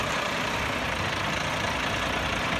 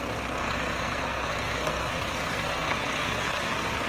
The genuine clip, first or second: first